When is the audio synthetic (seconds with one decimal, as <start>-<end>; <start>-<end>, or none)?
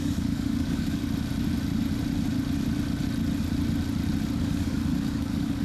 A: 0.0-1.0; 4.4-5.6